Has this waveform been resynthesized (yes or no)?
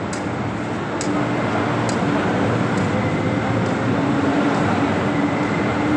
no